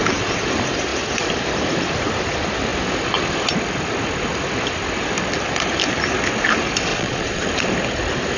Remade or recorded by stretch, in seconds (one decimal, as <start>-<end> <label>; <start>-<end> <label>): 0.0-6.9 recorded; 6.9-7.4 remade; 7.4-8.4 recorded

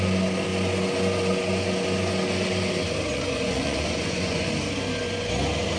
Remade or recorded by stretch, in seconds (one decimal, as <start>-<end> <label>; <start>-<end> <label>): 0.0-3.1 recorded; 3.1-4.5 remade; 4.5-5.8 recorded

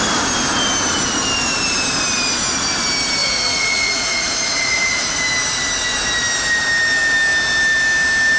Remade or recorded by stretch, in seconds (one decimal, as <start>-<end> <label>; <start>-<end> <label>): 0.0-3.2 recorded; 3.2-5.2 remade; 5.2-8.4 recorded

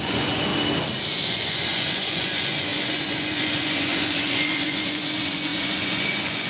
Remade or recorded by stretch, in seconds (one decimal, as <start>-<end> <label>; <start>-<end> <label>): 0.0-0.5 remade; 0.5-1.2 recorded; 1.2-6.5 remade

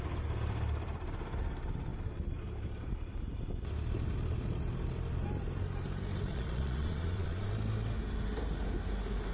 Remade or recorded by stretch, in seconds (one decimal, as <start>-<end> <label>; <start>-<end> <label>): 0.0-6.3 recorded; 6.3-7.5 remade; 7.5-9.3 recorded

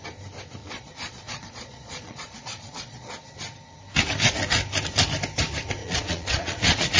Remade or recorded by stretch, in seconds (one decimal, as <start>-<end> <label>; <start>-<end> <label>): 0.0-0.6 recorded; 0.6-3.1 remade; 3.1-5.8 recorded; 5.8-7.0 remade